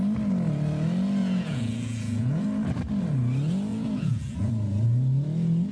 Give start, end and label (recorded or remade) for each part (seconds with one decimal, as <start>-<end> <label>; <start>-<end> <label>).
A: 0.0-1.2 recorded; 1.2-2.4 remade; 2.4-3.7 recorded; 3.7-4.5 remade; 4.5-5.7 recorded